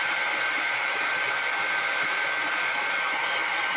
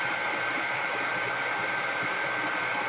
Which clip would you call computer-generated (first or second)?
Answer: second